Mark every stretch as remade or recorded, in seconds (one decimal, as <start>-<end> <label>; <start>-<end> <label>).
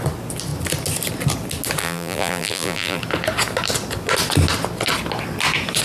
0.0-1.8 recorded; 1.8-3.0 remade; 3.0-5.8 recorded